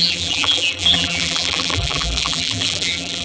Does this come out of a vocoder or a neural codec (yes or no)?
yes